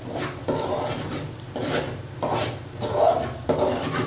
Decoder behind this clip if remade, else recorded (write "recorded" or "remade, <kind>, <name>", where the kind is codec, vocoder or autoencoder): recorded